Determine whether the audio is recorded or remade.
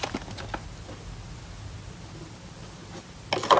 recorded